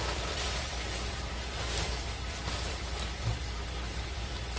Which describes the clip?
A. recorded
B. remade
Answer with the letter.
B